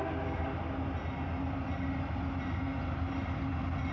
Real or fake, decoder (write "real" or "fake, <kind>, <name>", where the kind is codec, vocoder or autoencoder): real